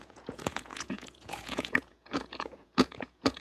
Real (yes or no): no